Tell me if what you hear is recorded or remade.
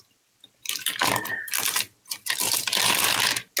recorded